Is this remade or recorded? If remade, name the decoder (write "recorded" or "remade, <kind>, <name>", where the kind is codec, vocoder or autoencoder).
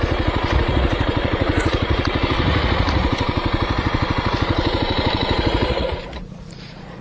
remade, vocoder, Vocos